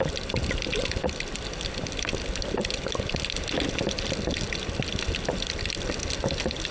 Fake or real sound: real